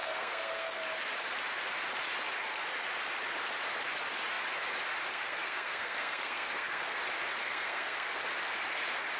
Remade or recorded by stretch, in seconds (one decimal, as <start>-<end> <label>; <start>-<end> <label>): 0.0-0.8 remade; 0.8-5.1 recorded; 5.1-7.0 remade; 7.0-7.4 recorded; 7.4-8.2 remade; 8.2-9.2 recorded